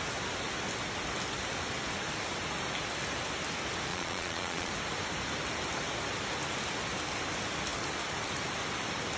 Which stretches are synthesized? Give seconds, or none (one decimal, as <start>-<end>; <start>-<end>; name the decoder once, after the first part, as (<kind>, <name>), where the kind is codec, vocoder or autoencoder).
3.9-4.7 (vocoder, Vocos)